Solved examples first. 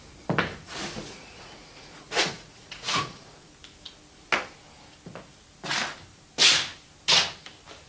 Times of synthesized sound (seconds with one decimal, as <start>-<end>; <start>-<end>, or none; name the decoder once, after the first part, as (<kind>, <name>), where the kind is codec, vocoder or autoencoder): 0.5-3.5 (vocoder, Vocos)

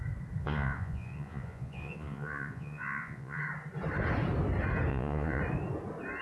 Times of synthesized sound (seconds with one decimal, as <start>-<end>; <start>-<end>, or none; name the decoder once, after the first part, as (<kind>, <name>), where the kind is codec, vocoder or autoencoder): 0.4-3.4 (vocoder, Vocos); 4.9-5.4

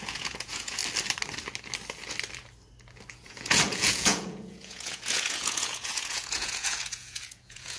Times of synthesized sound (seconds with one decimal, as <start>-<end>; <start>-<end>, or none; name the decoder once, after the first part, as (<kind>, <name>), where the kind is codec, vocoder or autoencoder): 0.0-0.8 (vocoder, Vocos); 3.1-7.8